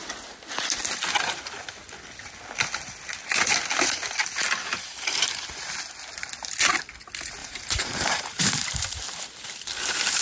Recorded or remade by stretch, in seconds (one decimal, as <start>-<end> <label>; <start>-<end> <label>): 0.0-7.4 recorded; 7.4-9.6 remade; 9.6-10.2 recorded